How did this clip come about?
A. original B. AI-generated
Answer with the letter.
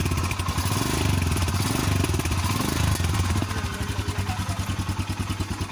A